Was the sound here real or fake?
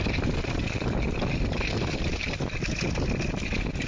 real